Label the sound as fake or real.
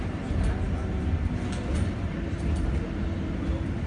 real